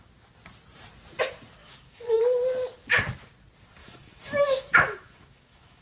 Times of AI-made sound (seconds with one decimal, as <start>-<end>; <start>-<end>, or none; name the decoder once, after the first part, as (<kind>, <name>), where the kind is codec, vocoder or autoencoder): 1.6-2.2 (autoencoder, DAC-VAE); 3.8-5.8

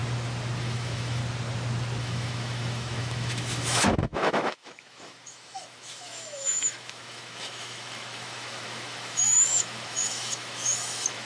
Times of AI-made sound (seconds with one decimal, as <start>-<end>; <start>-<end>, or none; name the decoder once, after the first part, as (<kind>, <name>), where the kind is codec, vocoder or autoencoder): 0.6-1.2 (autoencoder, DAC-VAE); 2.0-11.3

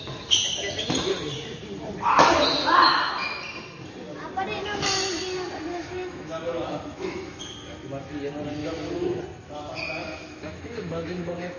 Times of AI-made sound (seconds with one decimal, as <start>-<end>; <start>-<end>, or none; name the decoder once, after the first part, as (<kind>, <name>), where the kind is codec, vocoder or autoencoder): 5.7-7.4 (autoencoder, DAC-VAE); 8.6-9.2; 10.0-11.6

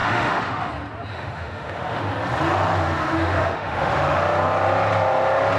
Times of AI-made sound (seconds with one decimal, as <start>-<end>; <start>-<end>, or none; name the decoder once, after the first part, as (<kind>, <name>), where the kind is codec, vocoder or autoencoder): 0.0-0.7 (autoencoder, DAC-VAE); 1.1-2.1; 3.0-4.2

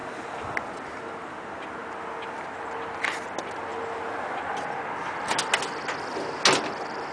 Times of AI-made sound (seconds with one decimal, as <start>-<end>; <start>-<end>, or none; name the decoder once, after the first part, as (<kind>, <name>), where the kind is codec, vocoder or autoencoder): none

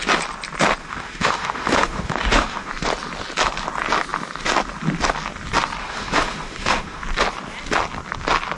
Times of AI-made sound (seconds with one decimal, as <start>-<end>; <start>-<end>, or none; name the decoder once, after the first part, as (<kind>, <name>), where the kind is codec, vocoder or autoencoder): 0.8-2.7 (autoencoder, DAC-VAE); 5.8-7.0

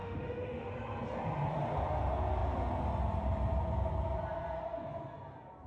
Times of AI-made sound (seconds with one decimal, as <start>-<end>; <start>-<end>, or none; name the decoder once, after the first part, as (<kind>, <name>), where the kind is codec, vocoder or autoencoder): 0.0-0.7 (autoencoder, DAC-VAE)

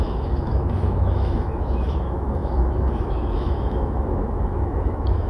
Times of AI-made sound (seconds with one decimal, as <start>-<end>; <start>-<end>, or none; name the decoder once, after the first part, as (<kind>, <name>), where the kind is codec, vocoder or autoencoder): 0.0-5.3 (autoencoder, DAC-VAE)